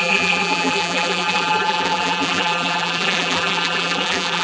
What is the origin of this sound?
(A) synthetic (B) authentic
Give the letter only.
A